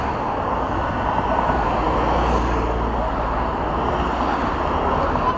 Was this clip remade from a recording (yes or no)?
no